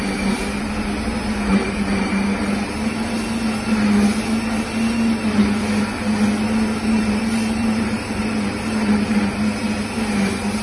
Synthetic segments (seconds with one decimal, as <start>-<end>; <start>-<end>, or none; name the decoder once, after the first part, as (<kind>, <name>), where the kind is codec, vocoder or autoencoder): 1.5-2.7 (vocoder, BigVGAN v2); 6.8-9.2